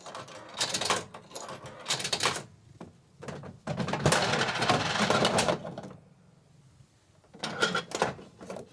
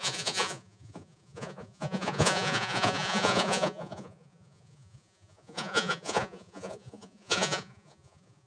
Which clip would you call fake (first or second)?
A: second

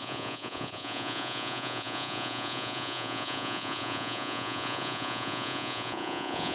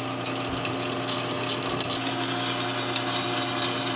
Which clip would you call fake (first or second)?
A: first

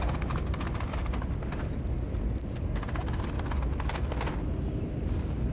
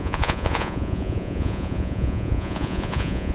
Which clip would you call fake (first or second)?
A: second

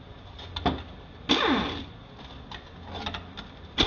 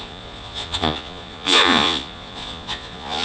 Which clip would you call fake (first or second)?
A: second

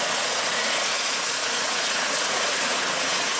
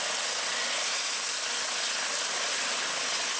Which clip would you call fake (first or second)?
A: first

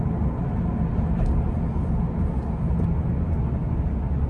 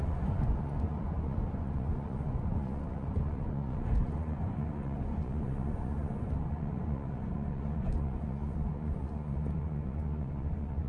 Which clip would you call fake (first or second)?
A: second